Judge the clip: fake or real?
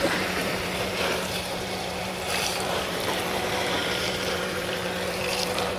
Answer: fake